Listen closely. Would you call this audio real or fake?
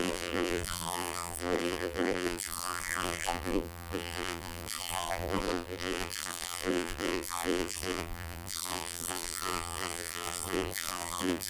fake